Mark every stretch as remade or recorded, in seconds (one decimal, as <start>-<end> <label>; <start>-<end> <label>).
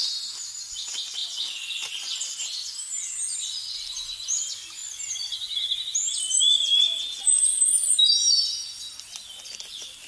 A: 0.0-10.1 recorded